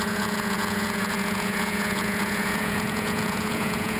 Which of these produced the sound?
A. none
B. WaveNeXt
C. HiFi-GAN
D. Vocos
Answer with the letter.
D